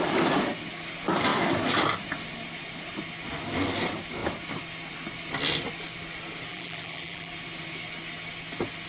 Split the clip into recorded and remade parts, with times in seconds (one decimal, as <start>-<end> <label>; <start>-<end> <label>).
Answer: 0.0-6.5 recorded; 6.5-7.3 remade; 7.3-8.9 recorded